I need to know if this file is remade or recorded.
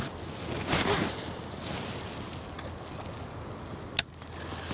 recorded